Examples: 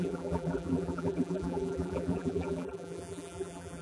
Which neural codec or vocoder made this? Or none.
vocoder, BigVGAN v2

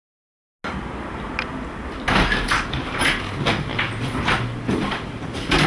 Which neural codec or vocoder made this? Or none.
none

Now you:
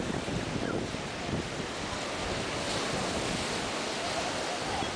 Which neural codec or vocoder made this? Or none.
none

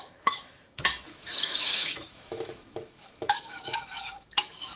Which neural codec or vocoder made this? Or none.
autoencoder, DAC-VAE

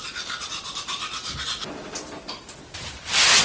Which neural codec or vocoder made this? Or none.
none